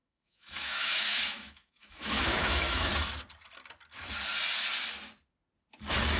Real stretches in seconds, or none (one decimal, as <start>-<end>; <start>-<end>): 2.9-6.2